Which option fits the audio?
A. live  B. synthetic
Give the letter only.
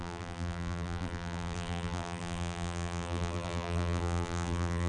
B